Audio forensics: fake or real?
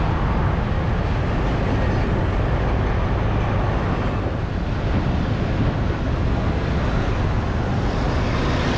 real